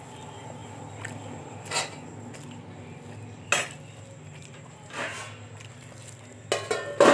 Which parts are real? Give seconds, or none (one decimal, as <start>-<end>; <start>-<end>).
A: 0.0-7.1